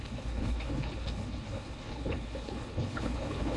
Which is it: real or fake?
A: fake